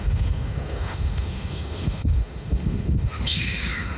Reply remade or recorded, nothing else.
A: remade